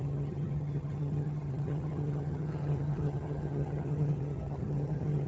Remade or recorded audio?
remade